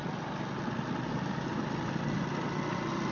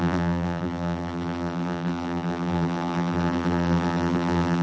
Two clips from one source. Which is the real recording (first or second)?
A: first